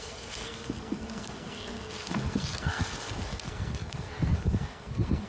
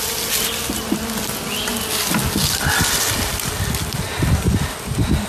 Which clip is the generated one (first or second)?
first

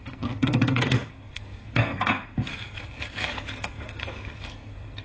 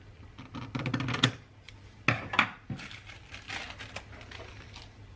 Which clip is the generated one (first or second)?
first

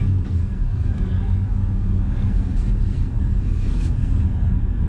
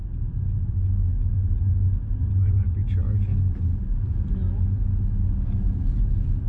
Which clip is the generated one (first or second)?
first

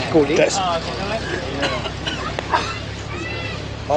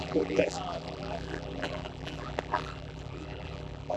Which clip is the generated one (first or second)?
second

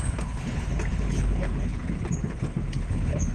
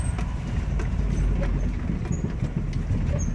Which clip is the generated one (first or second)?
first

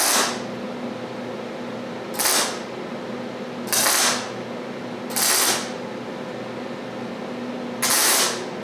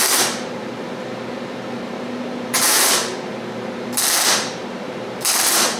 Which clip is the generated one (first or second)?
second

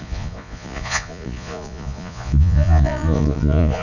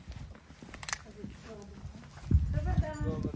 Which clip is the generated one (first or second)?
first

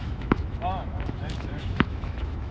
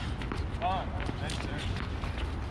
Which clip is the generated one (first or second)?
first